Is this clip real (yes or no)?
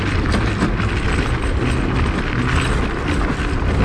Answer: yes